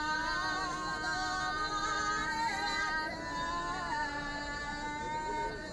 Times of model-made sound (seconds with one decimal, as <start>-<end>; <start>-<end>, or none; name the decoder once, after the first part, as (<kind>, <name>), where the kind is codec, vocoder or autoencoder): none